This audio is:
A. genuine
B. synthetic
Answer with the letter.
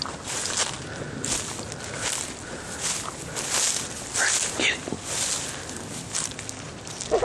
A